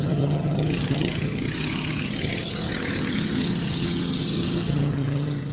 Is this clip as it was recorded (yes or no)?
no